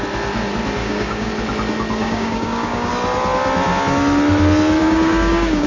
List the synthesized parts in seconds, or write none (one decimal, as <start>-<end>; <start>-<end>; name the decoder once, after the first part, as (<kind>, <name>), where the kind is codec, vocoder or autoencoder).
0.8-1.3 (codec, DAC); 2.0-2.9; 4.8-5.7